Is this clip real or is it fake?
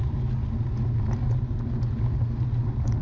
real